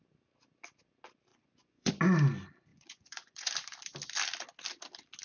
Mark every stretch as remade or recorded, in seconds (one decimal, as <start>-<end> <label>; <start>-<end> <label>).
0.0-1.3 recorded; 1.3-1.9 remade; 1.9-2.7 recorded; 2.7-3.5 remade; 3.5-5.2 recorded